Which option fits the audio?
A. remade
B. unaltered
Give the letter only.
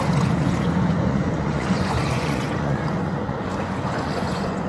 A